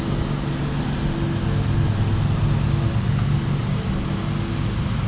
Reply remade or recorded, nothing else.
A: recorded